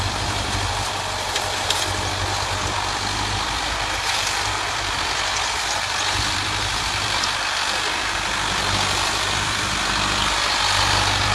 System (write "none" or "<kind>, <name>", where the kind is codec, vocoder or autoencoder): vocoder, BigVGAN v2